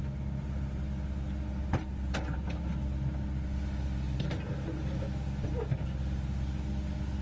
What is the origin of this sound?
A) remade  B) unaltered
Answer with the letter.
B